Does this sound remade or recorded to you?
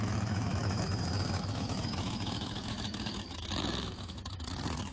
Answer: remade